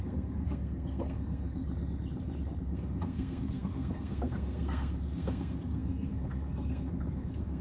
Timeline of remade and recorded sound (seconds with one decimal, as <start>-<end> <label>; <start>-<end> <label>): 0.0-1.6 remade; 1.6-2.6 recorded; 2.6-7.6 remade